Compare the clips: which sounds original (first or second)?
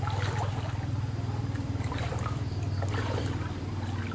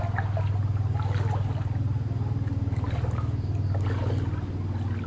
second